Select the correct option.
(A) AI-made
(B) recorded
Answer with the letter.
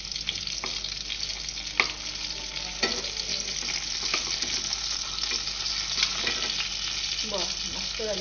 B